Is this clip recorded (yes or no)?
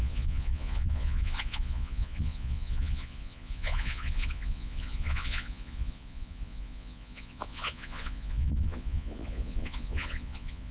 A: no